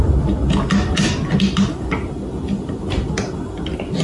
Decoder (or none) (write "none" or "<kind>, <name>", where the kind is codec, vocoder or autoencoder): none